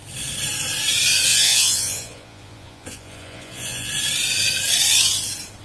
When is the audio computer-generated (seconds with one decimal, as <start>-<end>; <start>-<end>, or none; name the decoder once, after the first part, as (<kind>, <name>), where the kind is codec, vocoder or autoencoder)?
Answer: 1.3-3.9 (vocoder, Vocos)